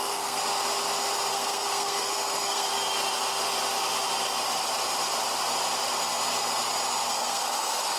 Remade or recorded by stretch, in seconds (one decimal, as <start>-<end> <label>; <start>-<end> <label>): 0.0-0.4 remade; 0.4-1.3 recorded; 1.3-2.7 remade; 2.7-7.1 recorded; 7.1-8.0 remade